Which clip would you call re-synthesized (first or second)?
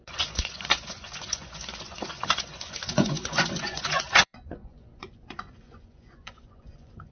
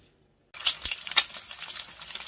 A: first